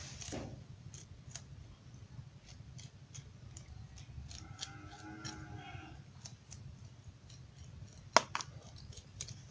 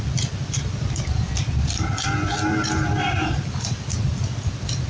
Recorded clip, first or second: first